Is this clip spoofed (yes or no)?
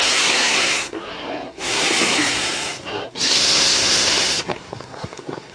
yes